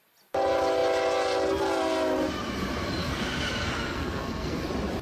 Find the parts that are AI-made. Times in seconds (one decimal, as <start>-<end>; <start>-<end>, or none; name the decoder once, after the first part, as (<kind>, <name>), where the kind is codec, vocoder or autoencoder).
3.0-4.6 (codec, SNAC)